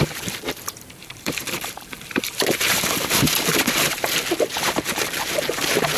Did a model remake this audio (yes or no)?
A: yes